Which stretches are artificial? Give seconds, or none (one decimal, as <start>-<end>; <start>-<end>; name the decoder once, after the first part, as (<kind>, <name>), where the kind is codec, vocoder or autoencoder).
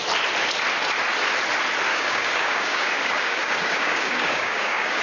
1.9-5.0 (codec, DAC)